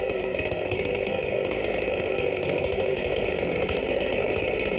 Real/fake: fake